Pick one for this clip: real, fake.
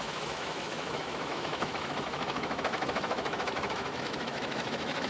fake